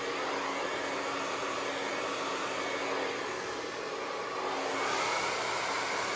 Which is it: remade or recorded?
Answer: recorded